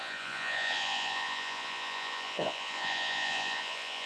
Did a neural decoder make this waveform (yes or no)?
yes